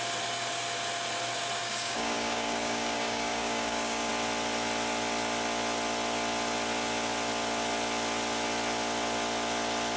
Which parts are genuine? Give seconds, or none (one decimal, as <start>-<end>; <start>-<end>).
0.0-1.6; 4.1-10.0